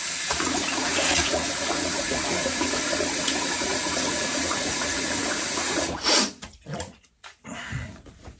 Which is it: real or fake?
fake